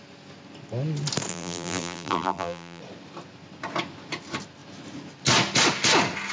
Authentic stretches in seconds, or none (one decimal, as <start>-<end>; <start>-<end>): 0.0-1.3; 2.8-6.3